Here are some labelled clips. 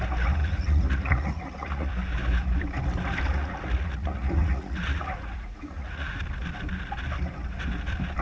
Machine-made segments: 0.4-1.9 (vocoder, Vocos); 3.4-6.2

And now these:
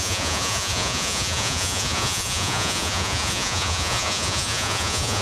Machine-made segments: 0.0-5.2 (vocoder, Vocos)

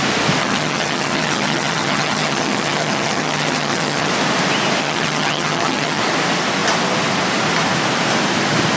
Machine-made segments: 0.4-4.1 (vocoder, HiFi-GAN); 4.8-6.0

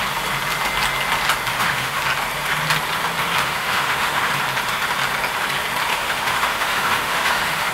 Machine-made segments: 1.5-2.0 (autoencoder, DAC-VAE); 3.4-4.3; 5.9-7.7